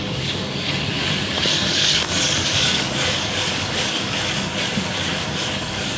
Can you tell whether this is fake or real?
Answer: fake